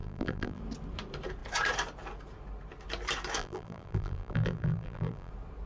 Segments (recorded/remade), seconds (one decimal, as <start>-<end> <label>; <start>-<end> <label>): 0.0-0.6 remade; 0.6-3.4 recorded; 3.4-5.3 remade; 5.3-5.7 recorded